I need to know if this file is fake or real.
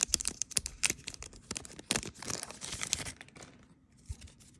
fake